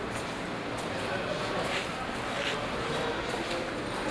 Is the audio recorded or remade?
recorded